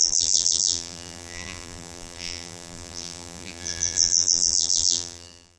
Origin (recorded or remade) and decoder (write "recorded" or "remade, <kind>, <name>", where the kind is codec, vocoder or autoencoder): remade, vocoder, BigVGAN v2